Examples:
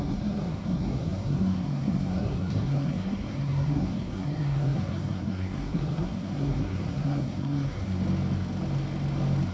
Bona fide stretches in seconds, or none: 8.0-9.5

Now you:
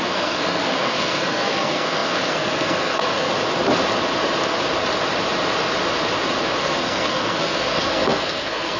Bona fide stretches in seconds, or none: 3.3-6.6

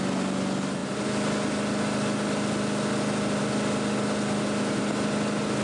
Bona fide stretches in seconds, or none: 0.0-5.6

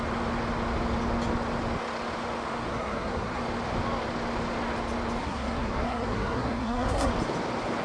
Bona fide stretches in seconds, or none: 0.0-2.7; 3.4-5.2; 7.1-7.8

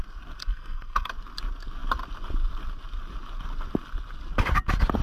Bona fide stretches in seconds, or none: 0.0-0.4; 1.1-5.0

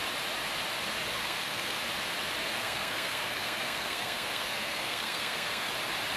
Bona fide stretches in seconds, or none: 0.0-1.1; 1.8-2.4; 5.7-6.2